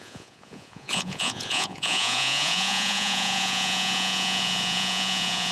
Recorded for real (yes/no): no